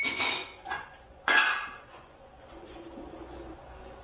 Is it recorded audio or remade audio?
remade